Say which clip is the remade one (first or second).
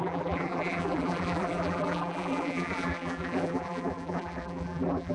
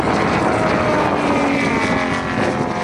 first